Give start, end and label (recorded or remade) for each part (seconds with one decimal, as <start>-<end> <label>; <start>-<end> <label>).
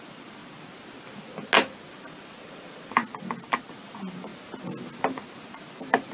0.0-0.4 remade; 0.4-1.9 recorded; 1.9-3.0 remade; 3.0-3.7 recorded; 3.7-4.3 remade; 4.3-6.1 recorded